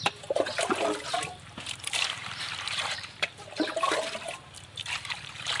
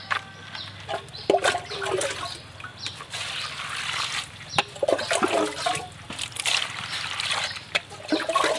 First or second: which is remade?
first